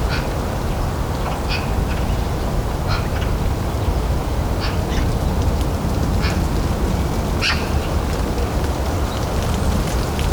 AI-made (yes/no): no